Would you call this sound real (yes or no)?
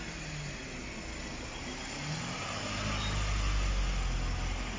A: yes